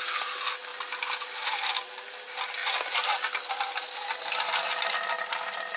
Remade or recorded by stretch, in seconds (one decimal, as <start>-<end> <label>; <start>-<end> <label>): 0.0-5.8 recorded